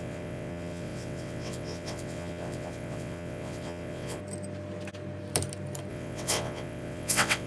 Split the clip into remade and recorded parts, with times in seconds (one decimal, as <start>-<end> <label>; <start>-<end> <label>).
0.0-4.2 remade; 4.2-5.9 recorded; 5.9-7.5 remade